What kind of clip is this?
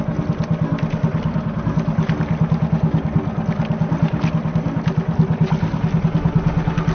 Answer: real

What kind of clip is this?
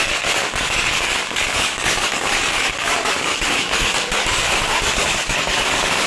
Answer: fake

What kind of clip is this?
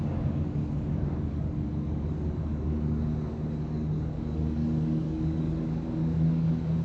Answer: fake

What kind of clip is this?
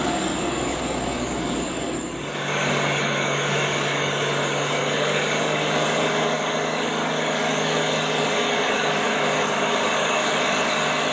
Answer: fake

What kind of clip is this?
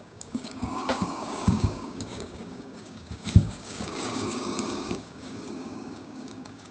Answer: fake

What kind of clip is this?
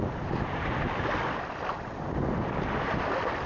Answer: real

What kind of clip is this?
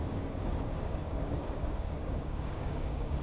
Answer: fake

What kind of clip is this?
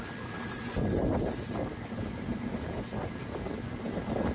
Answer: real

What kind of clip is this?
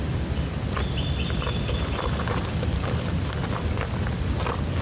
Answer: real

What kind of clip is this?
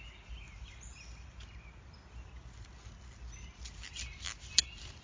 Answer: real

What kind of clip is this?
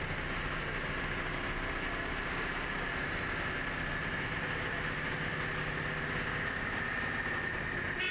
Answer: real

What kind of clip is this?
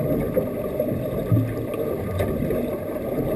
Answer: real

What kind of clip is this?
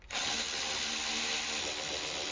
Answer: real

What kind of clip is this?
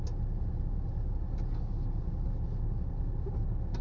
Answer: real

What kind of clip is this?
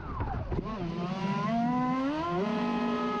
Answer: real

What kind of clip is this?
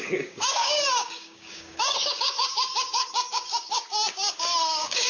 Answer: fake